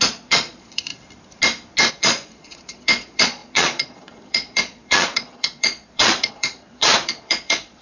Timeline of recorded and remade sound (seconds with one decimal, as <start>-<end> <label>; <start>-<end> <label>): 0.0-0.9 remade; 0.9-1.9 recorded; 1.9-7.8 remade